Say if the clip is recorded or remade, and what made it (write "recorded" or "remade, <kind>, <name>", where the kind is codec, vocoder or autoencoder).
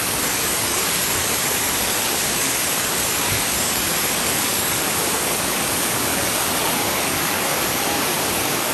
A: remade, codec, DAC